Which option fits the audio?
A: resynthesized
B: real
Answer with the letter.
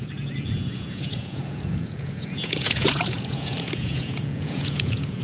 A